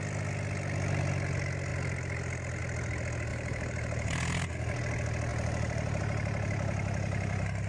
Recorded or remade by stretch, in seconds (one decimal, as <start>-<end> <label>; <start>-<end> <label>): 0.0-3.3 recorded; 3.3-4.5 remade; 4.5-5.3 recorded; 5.3-6.0 remade; 6.0-7.7 recorded